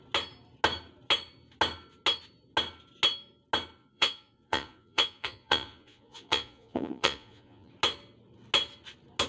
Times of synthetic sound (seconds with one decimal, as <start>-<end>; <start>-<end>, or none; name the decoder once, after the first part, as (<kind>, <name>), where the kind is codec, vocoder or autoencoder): 3.8-7.7 (vocoder, Vocos)

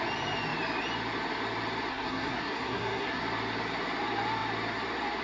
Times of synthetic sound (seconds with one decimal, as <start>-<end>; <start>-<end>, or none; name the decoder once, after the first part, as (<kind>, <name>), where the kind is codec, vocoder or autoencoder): 1.9-3.2 (codec, SNAC)